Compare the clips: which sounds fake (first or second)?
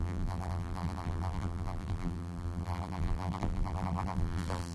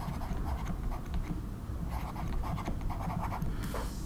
first